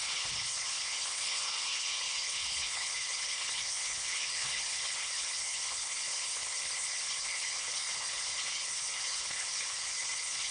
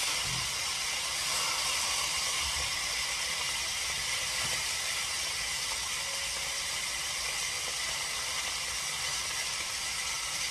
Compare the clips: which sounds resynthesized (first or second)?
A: first